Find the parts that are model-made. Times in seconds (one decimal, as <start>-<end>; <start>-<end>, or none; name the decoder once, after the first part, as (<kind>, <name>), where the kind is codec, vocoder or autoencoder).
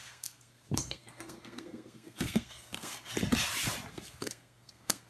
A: 0.0-3.1 (codec, SNAC); 3.9-5.1